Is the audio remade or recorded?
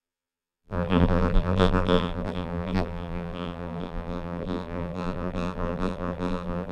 remade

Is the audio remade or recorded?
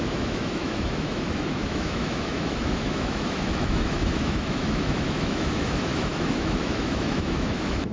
remade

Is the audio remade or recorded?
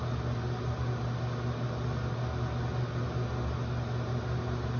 recorded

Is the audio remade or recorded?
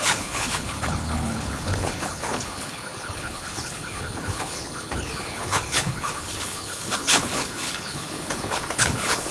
remade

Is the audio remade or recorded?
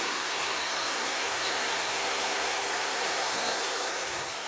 remade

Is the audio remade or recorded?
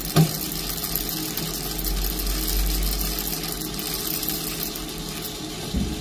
recorded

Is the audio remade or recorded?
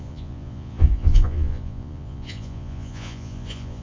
remade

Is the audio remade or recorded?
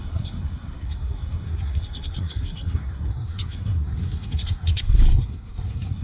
remade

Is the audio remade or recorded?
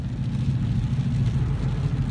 recorded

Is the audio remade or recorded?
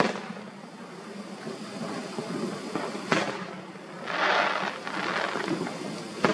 recorded